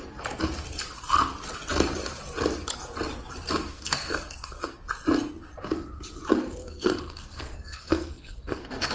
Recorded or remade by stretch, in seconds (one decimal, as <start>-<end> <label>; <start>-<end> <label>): 0.0-3.7 recorded; 3.7-4.8 remade; 4.8-6.6 recorded; 6.6-8.9 remade